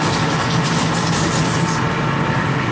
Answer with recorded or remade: recorded